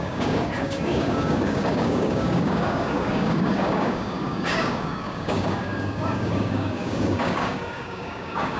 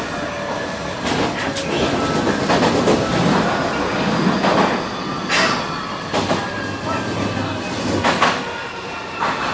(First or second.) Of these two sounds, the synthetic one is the first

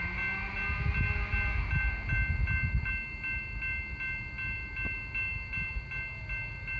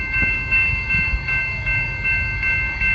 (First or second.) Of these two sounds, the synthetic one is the second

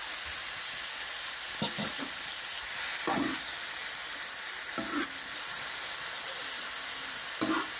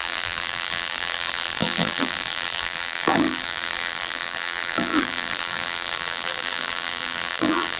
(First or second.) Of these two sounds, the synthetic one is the second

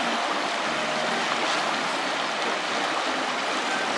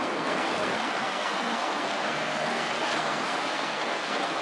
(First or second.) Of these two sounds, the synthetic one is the second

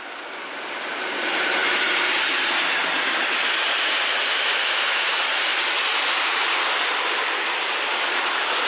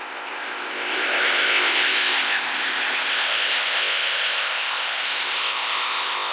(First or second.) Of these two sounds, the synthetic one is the second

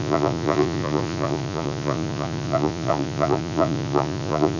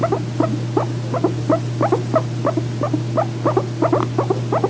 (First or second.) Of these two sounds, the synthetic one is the first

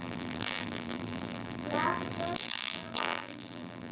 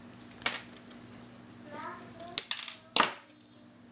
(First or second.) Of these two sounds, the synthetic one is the first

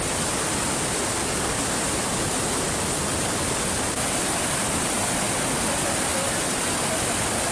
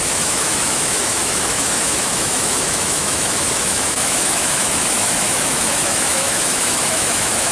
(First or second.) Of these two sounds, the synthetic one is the second